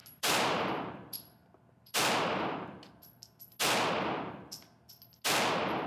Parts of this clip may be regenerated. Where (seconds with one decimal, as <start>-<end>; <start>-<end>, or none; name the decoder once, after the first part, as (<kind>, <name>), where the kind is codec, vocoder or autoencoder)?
0.0-0.7 (vocoder, BigVGAN v2)